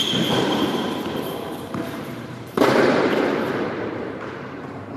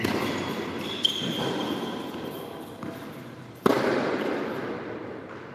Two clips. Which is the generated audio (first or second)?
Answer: first